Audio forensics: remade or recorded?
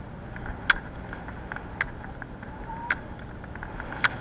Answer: recorded